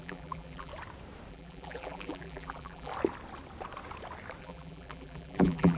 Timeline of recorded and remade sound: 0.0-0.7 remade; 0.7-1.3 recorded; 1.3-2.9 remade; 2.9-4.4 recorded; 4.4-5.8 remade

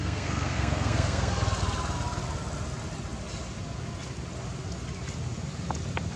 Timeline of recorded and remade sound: 0.0-1.3 remade; 1.3-6.2 recorded

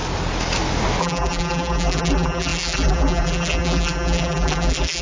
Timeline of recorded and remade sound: 0.0-1.0 recorded; 1.0-5.0 remade

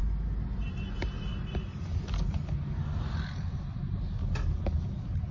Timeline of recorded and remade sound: 0.0-5.3 recorded

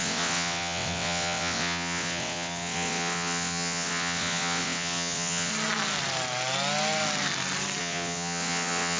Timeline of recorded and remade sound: 0.0-5.5 remade; 5.5-7.8 recorded; 7.8-9.0 remade

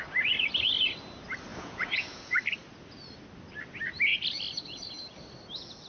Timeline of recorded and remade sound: 0.0-1.5 recorded; 1.5-2.4 remade; 2.4-5.9 recorded

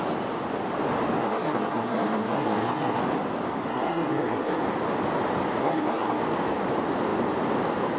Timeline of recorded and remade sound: 0.0-1.2 recorded; 1.2-3.0 remade; 3.0-3.7 recorded; 3.7-4.6 remade; 4.6-5.6 recorded; 5.6-6.2 remade; 6.2-8.0 recorded